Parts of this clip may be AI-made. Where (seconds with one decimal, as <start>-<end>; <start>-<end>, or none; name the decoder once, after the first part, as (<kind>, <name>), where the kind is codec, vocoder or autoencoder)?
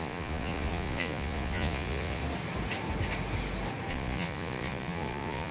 0.0-2.2 (vocoder, Vocos); 3.9-5.5